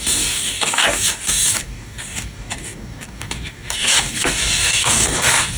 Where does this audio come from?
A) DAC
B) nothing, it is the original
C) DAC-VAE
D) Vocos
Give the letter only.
A